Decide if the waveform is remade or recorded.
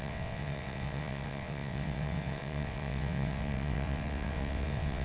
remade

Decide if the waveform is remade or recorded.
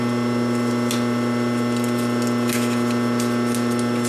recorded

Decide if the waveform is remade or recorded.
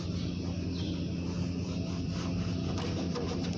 recorded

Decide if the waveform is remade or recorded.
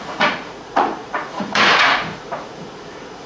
remade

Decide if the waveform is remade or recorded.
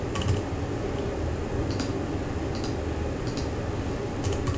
recorded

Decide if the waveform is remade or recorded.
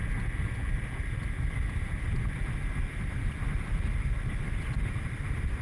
recorded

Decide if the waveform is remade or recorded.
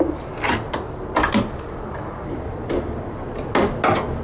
recorded